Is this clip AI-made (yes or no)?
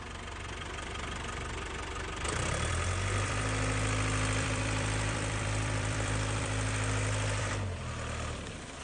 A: yes